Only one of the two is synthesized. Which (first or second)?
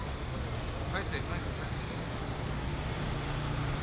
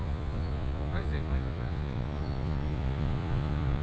second